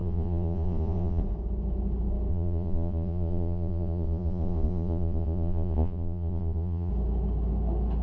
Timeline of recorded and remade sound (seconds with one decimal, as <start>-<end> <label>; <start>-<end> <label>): 0.0-1.2 remade; 1.2-2.3 recorded; 2.3-6.9 remade; 6.9-8.0 recorded